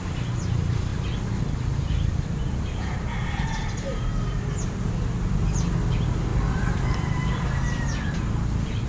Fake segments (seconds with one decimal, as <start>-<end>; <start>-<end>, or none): 0.9-3.5; 6.3-7.3